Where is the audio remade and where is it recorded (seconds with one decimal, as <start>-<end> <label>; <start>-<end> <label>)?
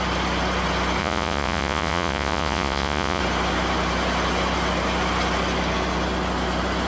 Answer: 0.0-1.0 recorded; 1.0-3.2 remade; 3.2-6.9 recorded